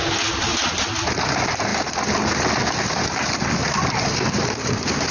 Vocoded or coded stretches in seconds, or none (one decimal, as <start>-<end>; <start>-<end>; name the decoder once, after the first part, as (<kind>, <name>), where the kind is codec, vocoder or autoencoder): none